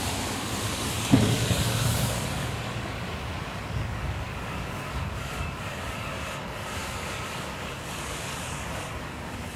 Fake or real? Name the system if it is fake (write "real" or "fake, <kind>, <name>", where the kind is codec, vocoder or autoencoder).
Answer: fake, codec, DAC